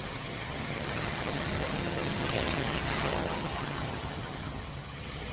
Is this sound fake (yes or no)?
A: yes